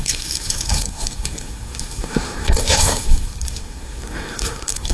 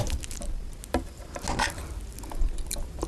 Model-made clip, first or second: first